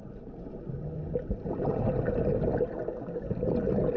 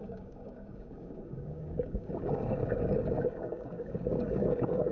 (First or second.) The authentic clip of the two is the first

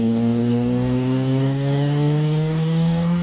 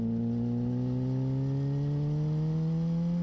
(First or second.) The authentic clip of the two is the second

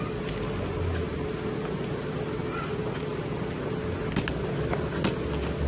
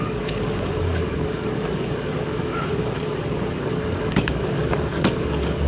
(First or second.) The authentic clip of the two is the first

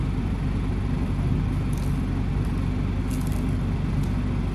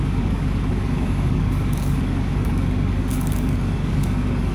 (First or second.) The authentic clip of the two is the first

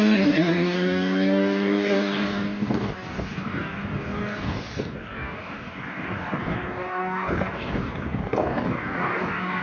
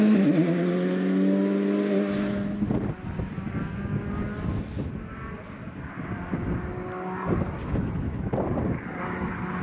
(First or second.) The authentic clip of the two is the second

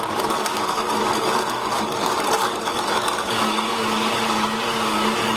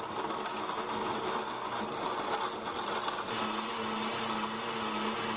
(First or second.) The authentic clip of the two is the second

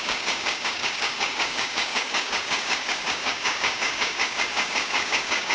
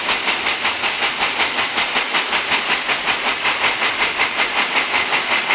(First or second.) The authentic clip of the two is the second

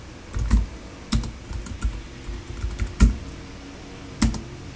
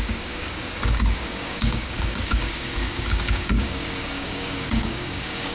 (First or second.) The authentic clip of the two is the first